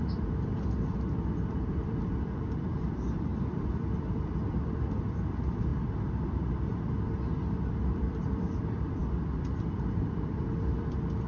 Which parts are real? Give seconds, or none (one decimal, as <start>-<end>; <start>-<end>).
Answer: 5.7-7.9